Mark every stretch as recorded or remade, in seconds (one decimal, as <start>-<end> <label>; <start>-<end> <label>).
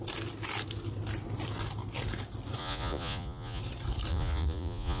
0.0-2.6 recorded; 2.6-3.6 remade; 3.6-4.1 recorded; 4.1-5.0 remade